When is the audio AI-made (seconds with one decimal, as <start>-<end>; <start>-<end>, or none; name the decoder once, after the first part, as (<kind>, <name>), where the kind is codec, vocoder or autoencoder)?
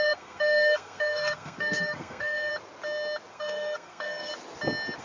0.0-2.5 (codec, SNAC); 3.3-4.3